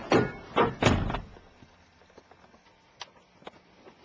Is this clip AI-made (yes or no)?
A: no